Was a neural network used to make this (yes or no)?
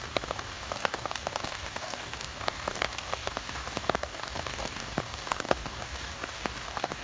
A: yes